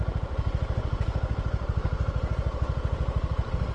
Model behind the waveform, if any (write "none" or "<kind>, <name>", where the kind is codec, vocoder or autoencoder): none